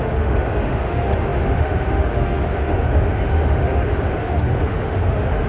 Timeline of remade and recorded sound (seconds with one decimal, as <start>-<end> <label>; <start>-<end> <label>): 0.0-5.5 remade